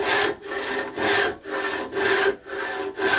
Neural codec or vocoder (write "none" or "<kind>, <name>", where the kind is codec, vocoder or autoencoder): none